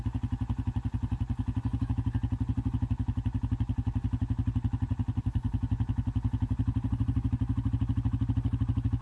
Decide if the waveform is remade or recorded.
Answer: recorded